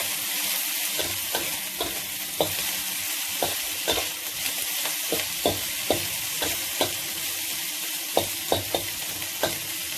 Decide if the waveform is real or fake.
real